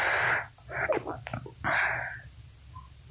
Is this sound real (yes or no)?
yes